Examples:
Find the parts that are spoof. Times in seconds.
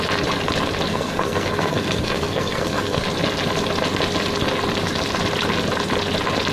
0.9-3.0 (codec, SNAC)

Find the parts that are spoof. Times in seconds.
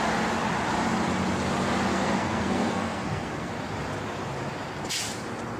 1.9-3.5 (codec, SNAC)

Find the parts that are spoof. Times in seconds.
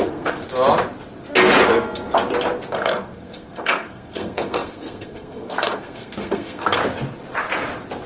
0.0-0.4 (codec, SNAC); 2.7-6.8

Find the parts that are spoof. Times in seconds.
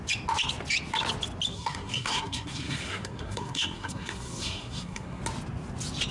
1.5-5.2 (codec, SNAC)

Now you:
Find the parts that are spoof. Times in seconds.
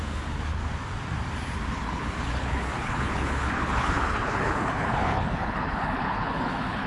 0.0-0.6 (codec, HILCodec); 1.7-6.9